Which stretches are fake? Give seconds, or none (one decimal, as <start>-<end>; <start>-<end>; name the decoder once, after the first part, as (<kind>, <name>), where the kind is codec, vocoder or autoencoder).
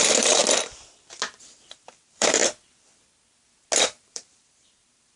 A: 0.0-0.4 (vocoder, BigVGAN v2); 1.7-2.4; 3.8-5.2